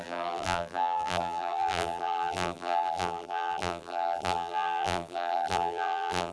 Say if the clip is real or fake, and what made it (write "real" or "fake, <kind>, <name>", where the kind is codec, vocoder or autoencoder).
fake, vocoder, BigVGAN v2